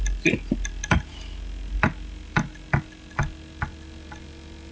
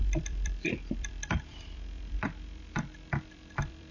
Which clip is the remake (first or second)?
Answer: second